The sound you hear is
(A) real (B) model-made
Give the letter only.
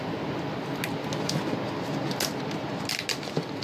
A